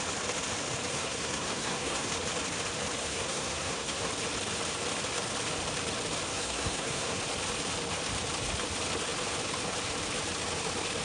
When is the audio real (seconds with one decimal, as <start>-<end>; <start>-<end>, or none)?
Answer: 0.0-0.9; 2.1-3.0; 4.1-6.3; 7.2-11.0